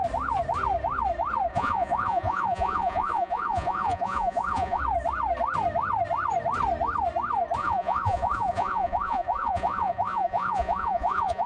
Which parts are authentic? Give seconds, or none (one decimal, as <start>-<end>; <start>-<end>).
0.0-1.5; 4.8-7.6